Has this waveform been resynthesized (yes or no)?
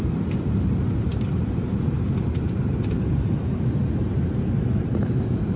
yes